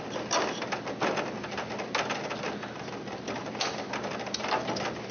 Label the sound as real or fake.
real